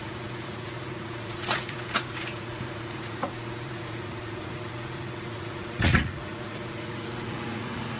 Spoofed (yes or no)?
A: yes